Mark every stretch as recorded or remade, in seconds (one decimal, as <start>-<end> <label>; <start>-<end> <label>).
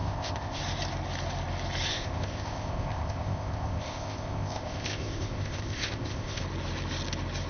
0.0-0.6 remade; 0.6-1.9 recorded; 1.9-6.4 remade; 6.4-7.5 recorded